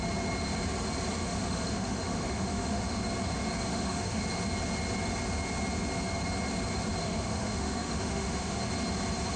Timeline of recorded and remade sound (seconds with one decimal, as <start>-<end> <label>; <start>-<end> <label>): 0.0-1.2 recorded; 1.2-3.0 remade; 3.0-3.7 recorded; 3.7-4.2 remade; 4.2-7.0 recorded; 7.0-8.6 remade; 8.6-9.4 recorded